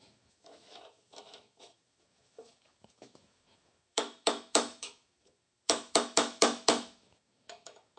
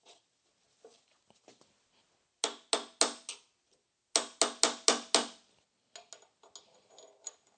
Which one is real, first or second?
second